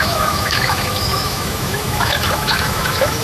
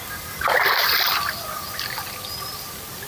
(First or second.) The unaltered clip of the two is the second